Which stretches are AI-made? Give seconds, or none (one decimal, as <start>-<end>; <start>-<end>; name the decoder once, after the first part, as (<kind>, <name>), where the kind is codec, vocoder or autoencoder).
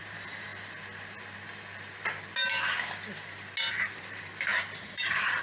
0.0-0.5 (vocoder, BigVGAN v2); 3.7-5.4